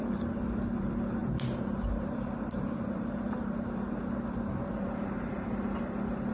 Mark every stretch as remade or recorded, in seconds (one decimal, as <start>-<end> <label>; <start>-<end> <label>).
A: 0.0-6.3 remade